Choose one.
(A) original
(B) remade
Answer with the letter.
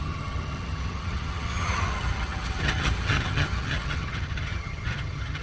B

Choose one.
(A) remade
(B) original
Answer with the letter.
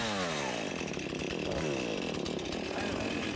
B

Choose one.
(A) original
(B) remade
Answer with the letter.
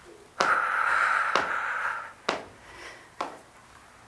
A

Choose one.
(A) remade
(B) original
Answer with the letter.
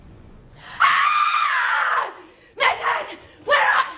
A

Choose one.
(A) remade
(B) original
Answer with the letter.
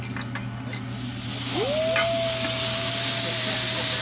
B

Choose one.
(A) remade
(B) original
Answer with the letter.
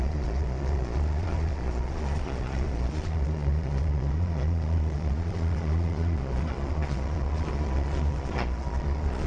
A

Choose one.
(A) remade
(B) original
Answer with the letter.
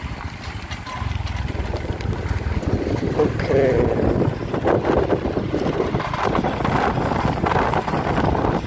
B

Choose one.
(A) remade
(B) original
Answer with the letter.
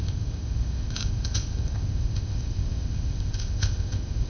A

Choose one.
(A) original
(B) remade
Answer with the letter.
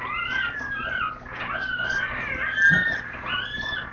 A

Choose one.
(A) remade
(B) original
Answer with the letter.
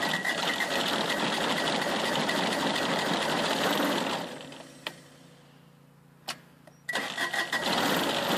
B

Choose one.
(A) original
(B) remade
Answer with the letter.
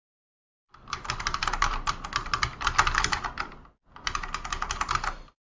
A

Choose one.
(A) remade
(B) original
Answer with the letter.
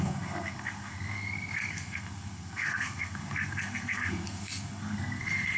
A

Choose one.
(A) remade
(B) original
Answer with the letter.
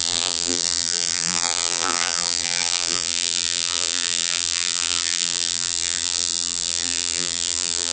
A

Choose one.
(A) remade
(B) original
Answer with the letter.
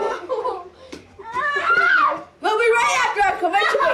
A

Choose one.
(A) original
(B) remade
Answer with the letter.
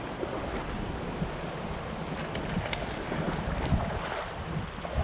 A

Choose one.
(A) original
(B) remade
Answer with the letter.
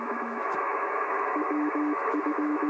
B